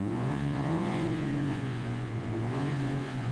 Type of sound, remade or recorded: remade